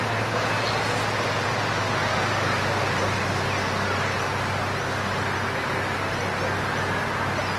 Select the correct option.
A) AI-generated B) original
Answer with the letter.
B